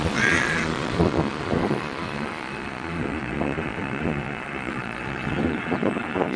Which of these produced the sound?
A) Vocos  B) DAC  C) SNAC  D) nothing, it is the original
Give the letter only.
A